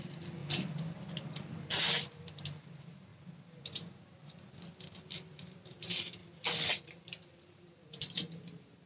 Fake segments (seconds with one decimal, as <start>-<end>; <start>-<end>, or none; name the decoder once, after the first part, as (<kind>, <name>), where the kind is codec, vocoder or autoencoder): 0.0-0.4 (vocoder, BigVGAN v2); 1.6-3.1; 5.4-6.2; 6.9-8.9